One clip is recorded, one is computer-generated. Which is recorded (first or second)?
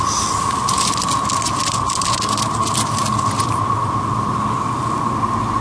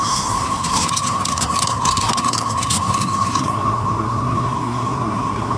first